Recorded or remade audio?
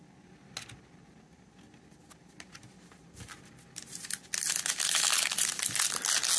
recorded